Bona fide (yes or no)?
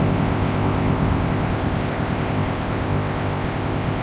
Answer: no